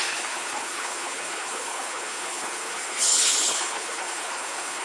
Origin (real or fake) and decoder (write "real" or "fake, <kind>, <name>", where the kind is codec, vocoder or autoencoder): fake, codec, HILCodec